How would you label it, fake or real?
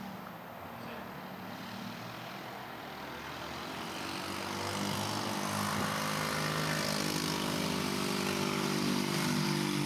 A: real